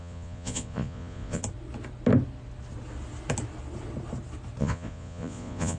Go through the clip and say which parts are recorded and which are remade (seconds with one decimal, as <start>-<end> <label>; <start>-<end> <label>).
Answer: 0.0-1.4 remade; 1.4-4.6 recorded; 4.6-5.8 remade

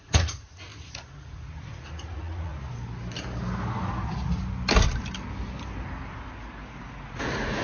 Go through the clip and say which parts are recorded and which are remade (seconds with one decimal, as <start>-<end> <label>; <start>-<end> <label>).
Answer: 0.0-2.5 remade; 2.5-7.1 recorded; 7.1-7.6 remade

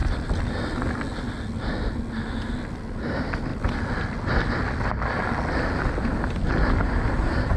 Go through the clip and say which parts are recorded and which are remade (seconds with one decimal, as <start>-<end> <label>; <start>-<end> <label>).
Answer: 0.0-7.6 recorded

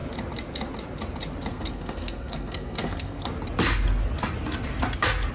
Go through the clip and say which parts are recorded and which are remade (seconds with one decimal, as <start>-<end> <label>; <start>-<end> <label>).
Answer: 0.0-1.5 recorded; 1.5-3.3 remade; 3.3-5.3 recorded

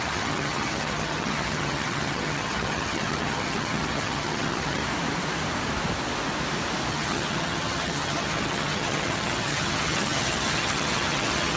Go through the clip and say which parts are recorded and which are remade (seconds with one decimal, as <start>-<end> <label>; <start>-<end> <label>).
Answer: 0.0-4.8 remade; 4.8-6.9 recorded; 6.9-11.6 remade

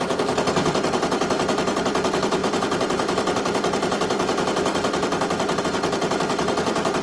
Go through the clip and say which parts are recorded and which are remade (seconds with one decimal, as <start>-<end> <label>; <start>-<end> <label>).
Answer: 0.0-7.0 recorded